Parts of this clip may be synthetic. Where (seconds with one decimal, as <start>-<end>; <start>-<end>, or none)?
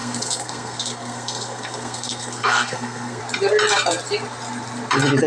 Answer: 0.0-3.2